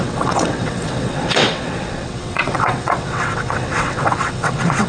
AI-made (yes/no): yes